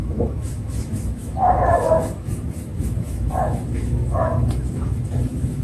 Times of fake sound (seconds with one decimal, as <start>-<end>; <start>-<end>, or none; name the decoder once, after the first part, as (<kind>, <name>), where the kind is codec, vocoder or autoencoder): 0.0-5.6 (autoencoder, DAC-VAE)